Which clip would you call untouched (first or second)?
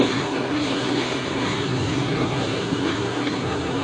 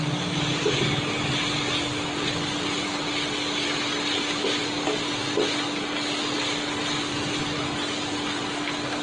second